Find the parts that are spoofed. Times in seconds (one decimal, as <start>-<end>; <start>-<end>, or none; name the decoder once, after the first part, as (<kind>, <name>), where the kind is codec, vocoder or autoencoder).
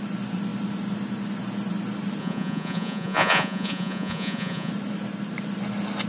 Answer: 2.2-4.7 (vocoder, Vocos)